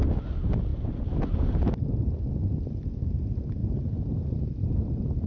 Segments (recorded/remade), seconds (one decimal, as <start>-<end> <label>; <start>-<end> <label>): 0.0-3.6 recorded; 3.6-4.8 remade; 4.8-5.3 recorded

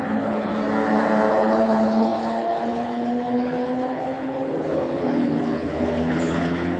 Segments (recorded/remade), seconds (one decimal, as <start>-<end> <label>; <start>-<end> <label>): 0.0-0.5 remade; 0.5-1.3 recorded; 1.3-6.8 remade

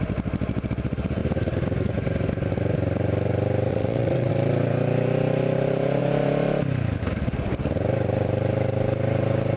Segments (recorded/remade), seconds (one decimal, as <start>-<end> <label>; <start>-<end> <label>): 0.0-3.7 recorded; 3.7-4.3 remade; 4.3-9.6 recorded

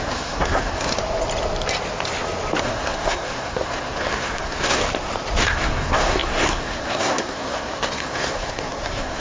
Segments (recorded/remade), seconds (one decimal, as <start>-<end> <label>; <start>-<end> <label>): 0.0-0.9 remade; 0.9-2.6 recorded; 2.6-4.8 remade; 4.8-5.4 recorded; 5.4-9.2 remade

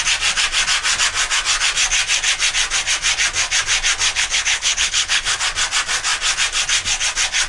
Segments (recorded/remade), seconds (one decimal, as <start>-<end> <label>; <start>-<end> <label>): 0.0-4.1 recorded; 4.1-5.4 remade; 5.4-7.5 recorded

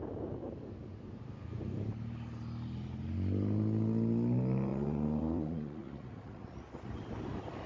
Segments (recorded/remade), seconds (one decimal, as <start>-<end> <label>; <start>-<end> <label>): 0.0-4.7 recorded; 4.7-6.7 remade; 6.7-7.7 recorded